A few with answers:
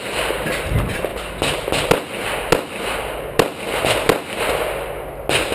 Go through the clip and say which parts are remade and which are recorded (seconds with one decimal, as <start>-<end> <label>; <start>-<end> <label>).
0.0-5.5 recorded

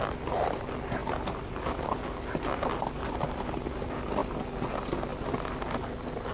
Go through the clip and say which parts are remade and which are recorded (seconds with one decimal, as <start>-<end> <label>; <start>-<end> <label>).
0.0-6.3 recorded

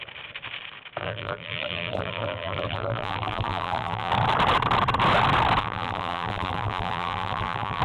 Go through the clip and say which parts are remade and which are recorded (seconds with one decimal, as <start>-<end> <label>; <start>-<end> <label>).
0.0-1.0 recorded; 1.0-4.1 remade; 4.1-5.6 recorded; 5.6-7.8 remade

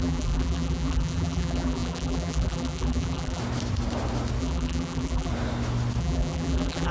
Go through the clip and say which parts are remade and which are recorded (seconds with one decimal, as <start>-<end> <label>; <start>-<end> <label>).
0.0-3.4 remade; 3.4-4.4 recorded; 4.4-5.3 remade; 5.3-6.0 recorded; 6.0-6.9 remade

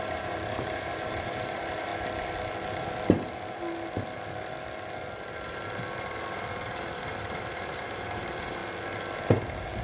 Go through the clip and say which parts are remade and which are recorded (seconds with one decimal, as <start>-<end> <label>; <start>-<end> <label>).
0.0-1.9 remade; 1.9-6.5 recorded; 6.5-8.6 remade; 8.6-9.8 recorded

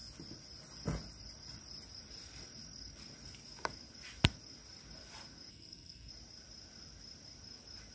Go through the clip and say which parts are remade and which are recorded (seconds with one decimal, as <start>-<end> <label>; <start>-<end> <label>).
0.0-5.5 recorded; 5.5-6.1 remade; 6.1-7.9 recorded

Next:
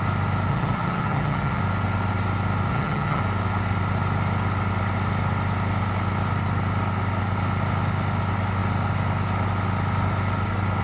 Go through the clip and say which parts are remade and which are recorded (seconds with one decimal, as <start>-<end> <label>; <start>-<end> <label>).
0.0-0.5 recorded; 0.5-1.6 remade; 1.6-2.7 recorded; 2.7-3.2 remade; 3.2-10.8 recorded